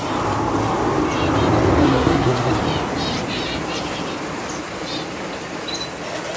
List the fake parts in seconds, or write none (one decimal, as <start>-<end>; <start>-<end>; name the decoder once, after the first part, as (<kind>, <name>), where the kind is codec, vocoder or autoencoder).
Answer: 1.8-2.5 (codec, SNAC)